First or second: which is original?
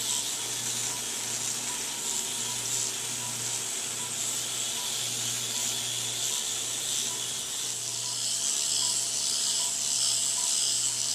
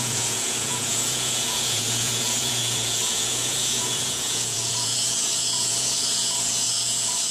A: first